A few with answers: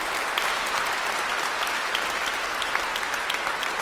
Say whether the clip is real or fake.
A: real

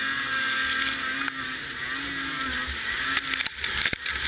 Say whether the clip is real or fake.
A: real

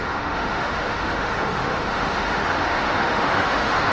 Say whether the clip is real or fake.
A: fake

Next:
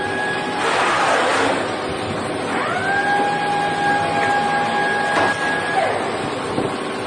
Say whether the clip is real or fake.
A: real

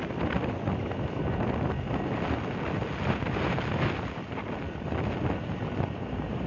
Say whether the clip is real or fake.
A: real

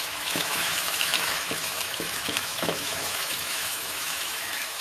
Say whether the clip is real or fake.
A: fake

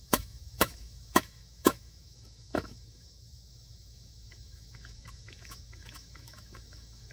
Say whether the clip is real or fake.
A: fake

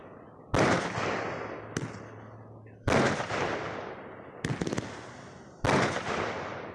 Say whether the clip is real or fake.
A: real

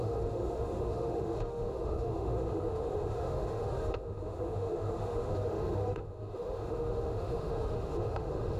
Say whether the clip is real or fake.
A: fake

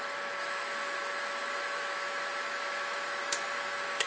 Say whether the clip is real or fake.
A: fake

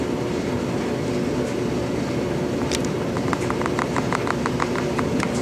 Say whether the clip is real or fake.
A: real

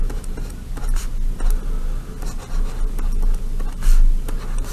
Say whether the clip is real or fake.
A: real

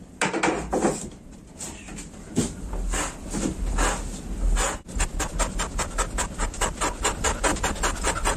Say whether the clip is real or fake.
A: real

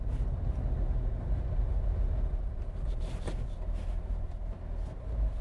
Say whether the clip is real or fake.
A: real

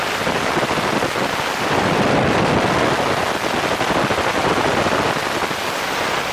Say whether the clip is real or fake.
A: real